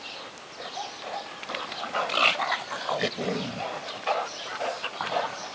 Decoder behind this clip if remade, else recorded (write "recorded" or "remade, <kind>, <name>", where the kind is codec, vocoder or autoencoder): remade, vocoder, BigVGAN v2